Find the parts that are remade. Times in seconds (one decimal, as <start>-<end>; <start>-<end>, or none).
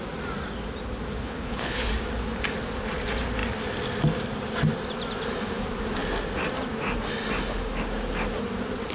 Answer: 1.2-1.9